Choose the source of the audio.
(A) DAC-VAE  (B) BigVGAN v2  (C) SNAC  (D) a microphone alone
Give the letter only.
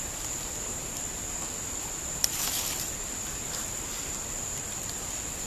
B